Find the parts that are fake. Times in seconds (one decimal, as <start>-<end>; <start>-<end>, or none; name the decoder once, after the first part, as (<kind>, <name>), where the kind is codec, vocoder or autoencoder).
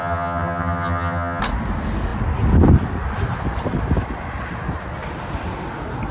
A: 0.0-1.4 (vocoder, HiFi-GAN)